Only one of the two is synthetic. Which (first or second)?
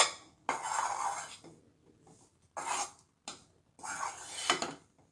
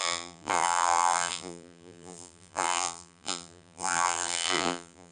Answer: second